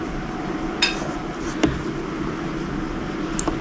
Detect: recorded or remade recorded